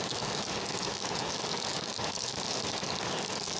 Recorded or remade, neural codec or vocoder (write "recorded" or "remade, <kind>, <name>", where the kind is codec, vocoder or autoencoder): remade, codec, DAC